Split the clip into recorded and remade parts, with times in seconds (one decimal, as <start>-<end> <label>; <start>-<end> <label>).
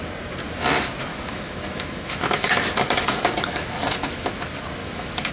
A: 0.0-1.1 recorded; 1.1-4.3 remade; 4.3-4.8 recorded; 4.8-5.3 remade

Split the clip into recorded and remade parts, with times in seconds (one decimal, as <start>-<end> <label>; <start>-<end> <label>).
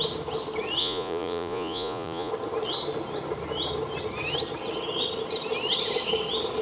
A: 0.0-0.8 recorded; 0.8-2.3 remade; 2.3-6.6 recorded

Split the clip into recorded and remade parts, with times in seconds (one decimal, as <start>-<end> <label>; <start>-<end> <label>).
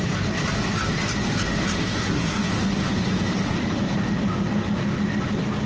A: 0.0-1.8 recorded; 1.8-2.5 remade; 2.5-5.7 recorded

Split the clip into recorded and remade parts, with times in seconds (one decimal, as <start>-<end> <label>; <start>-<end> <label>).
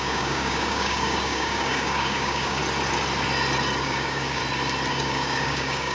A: 0.0-2.6 remade; 2.6-3.8 recorded; 3.8-4.4 remade; 4.4-4.9 recorded; 4.9-5.9 remade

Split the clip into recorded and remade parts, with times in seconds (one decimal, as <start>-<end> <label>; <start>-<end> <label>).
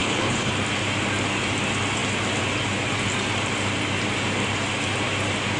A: 0.0-0.5 remade; 0.5-5.6 recorded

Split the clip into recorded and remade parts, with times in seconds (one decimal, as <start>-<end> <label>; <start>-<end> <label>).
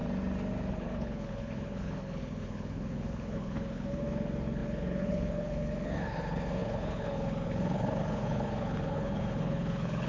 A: 0.0-0.7 recorded; 0.7-10.1 remade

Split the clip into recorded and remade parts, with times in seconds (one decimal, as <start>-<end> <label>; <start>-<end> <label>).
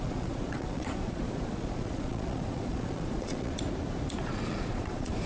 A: 0.0-3.5 remade; 3.5-4.2 recorded; 4.2-5.3 remade